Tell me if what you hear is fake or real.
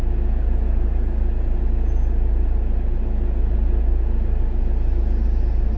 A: real